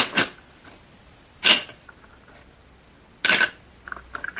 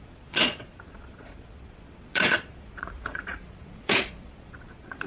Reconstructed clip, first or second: second